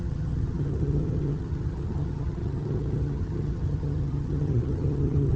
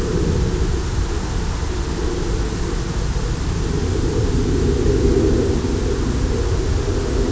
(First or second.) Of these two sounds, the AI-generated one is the first